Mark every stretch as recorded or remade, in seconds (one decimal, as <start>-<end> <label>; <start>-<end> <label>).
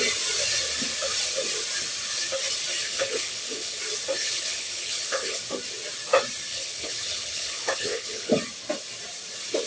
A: 0.0-2.8 recorded; 2.8-3.8 remade; 3.8-4.2 recorded; 4.2-5.4 remade; 5.4-6.5 recorded; 6.5-8.3 remade; 8.3-9.7 recorded